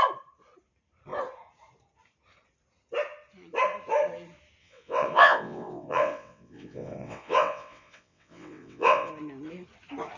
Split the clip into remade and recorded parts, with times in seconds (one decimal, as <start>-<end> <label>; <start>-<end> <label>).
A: 0.0-4.6 recorded; 4.6-9.1 remade; 9.1-10.2 recorded